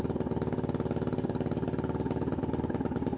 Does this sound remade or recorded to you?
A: recorded